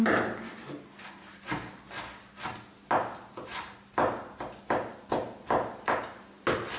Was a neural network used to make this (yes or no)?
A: no